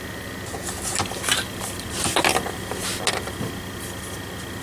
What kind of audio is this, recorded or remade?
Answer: recorded